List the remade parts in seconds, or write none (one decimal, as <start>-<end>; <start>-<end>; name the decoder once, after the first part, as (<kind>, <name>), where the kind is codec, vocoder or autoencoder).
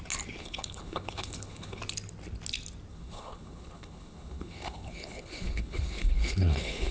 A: 0.4-1.8 (codec, HILCodec); 2.9-6.9